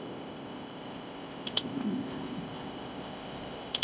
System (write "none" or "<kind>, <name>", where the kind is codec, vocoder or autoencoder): codec, ZipCodec